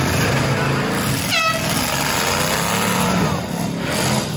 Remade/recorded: recorded